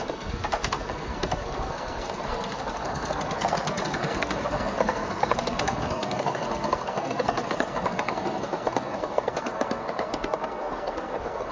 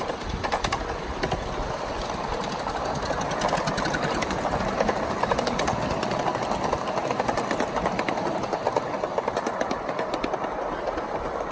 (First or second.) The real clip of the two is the second